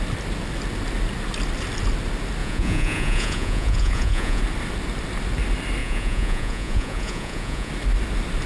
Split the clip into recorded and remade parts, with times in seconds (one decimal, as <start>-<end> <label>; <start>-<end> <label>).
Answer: 0.0-2.4 recorded; 2.4-4.4 remade; 4.4-5.8 recorded; 5.8-7.7 remade; 7.7-8.5 recorded